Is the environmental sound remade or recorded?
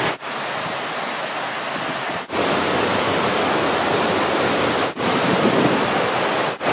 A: recorded